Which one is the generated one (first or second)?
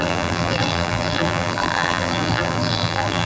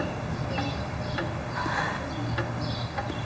first